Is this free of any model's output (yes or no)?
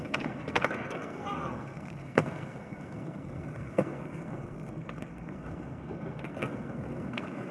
no